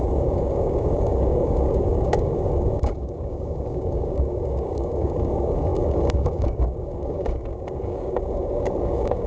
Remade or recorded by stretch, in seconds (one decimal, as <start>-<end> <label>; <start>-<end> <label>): 0.0-9.3 remade